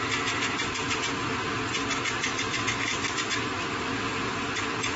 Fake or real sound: real